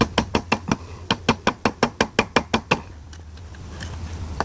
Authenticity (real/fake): real